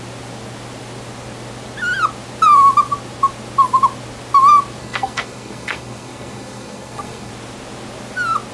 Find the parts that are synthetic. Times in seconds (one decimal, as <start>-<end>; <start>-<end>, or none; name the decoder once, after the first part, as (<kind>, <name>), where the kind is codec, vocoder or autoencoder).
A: 4.8-7.3 (codec, SNAC)